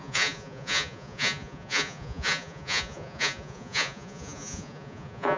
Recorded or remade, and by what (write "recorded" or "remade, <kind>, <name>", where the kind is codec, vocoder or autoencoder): remade, vocoder, Vocos